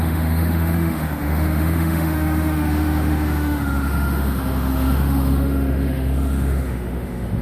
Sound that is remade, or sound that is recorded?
remade